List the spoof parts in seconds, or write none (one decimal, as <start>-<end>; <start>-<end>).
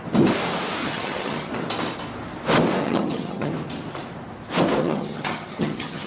0.8-1.5; 2.8-3.5; 4.8-6.1